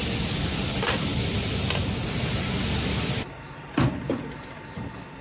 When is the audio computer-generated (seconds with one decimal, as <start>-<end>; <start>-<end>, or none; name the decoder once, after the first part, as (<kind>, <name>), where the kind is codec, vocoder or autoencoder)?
none